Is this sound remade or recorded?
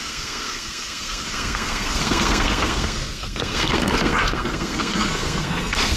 remade